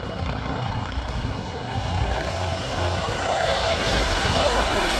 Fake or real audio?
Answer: fake